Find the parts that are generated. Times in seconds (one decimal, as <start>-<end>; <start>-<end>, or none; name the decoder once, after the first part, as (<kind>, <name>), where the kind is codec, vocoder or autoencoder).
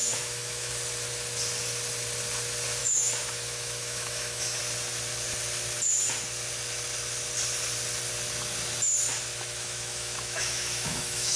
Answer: 0.0-0.7 (autoencoder, DAC-VAE); 2.8-4.6; 9.3-11.4